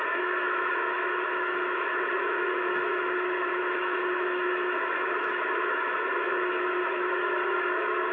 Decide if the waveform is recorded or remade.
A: remade